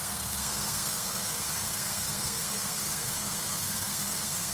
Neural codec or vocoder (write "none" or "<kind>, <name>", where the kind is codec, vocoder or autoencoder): codec, SNAC